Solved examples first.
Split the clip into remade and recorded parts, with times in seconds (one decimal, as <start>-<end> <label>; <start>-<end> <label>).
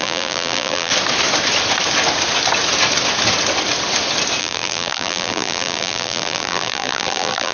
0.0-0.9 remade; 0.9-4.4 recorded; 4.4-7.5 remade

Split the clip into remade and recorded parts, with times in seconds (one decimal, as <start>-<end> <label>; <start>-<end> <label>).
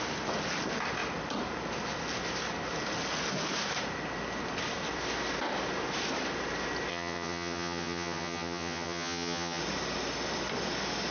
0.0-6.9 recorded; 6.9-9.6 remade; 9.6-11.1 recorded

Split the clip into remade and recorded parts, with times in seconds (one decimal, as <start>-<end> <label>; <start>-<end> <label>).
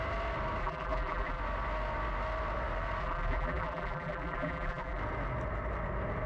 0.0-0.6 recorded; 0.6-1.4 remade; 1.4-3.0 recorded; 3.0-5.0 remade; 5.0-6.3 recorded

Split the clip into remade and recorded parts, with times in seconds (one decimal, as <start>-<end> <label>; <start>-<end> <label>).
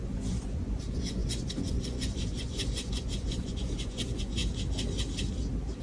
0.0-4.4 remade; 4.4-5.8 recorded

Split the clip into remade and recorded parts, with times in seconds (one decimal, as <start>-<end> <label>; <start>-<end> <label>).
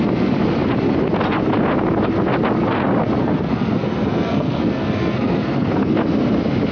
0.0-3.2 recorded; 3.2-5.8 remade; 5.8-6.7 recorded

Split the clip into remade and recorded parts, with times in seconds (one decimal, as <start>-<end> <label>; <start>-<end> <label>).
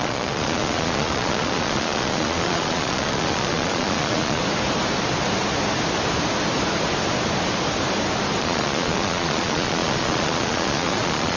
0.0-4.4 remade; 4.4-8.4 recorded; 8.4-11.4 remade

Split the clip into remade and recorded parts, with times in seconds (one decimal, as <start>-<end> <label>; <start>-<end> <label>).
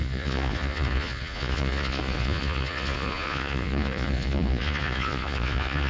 0.0-5.9 remade